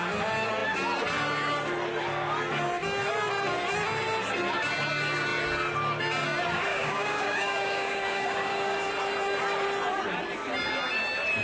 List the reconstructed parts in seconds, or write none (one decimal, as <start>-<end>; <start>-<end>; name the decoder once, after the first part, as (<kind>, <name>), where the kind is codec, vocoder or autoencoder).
6.7-8.9 (codec, DAC)